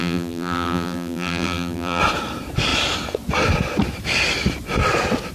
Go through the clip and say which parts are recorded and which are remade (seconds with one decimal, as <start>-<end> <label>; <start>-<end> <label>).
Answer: 0.0-2.0 remade; 2.0-5.3 recorded